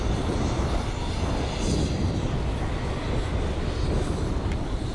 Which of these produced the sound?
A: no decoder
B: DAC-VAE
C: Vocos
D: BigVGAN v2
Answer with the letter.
A